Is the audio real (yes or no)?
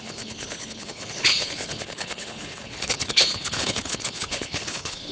no